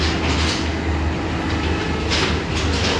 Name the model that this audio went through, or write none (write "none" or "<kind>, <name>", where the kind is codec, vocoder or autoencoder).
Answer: none